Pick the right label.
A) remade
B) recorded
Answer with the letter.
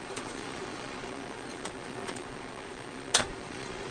A